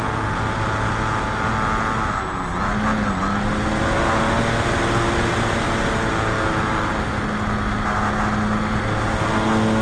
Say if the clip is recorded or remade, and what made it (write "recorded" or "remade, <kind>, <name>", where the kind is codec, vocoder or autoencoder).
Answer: recorded